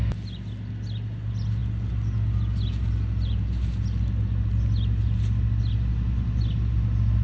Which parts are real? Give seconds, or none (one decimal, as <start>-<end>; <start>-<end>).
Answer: 0.0-7.2